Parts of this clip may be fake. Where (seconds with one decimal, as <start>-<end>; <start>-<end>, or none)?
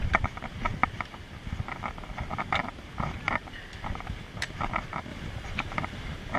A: 5.1-6.4